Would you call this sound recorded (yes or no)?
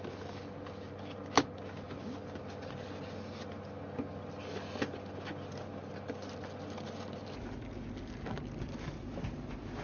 yes